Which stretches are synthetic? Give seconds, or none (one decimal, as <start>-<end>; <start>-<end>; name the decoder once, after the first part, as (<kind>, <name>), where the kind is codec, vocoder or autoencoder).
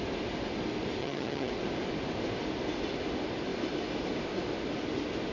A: 1.0-1.5 (vocoder, HiFi-GAN)